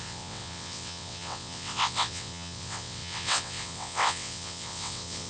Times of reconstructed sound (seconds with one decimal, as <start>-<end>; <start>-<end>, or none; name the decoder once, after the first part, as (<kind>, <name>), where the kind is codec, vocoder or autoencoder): 0.0-5.3 (vocoder, WaveNeXt)